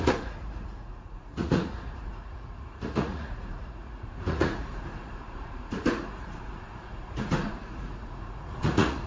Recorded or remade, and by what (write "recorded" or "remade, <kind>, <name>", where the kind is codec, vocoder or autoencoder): remade, vocoder, Vocos